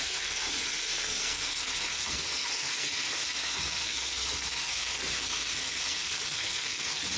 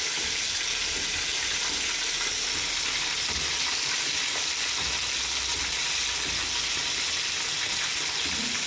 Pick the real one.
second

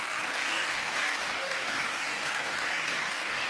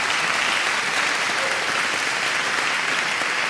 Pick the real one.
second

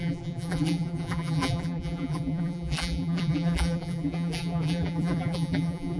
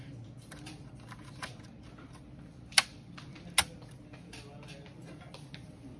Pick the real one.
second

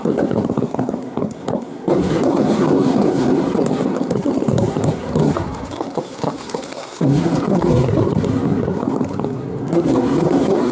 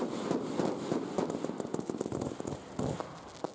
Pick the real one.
second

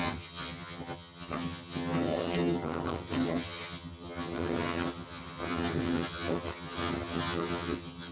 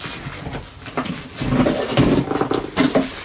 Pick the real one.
second